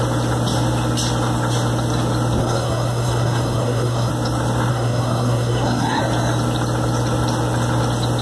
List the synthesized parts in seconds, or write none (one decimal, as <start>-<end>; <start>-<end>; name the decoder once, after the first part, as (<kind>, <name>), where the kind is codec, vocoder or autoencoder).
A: 2.4-4.1 (codec, SNAC); 4.7-6.0

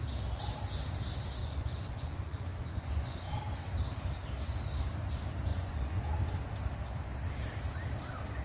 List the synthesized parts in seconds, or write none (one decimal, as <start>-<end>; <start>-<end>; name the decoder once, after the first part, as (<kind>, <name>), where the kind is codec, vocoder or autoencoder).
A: 1.4-3.3 (vocoder, Vocos); 5.5-6.1